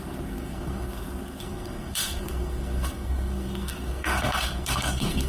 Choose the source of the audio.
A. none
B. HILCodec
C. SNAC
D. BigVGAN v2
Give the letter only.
C